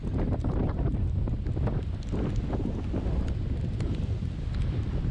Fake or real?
real